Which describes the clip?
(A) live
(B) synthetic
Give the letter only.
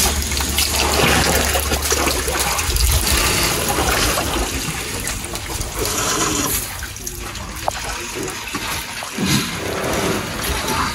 A